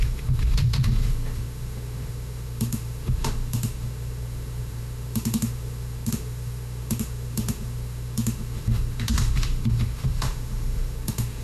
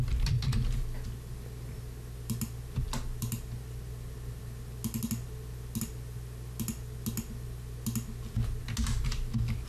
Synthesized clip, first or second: first